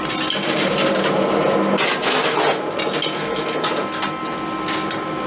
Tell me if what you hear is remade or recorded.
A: recorded